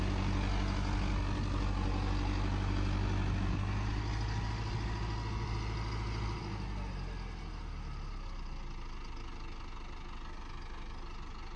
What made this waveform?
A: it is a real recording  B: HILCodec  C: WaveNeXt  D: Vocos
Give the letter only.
A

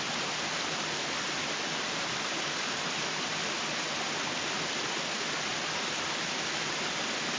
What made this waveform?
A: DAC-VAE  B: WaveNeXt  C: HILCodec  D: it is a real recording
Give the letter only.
D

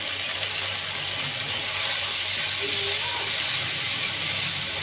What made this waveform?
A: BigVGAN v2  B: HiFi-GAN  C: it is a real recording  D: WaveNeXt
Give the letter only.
C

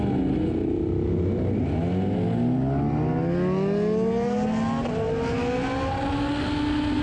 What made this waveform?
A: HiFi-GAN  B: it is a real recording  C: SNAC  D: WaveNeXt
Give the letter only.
B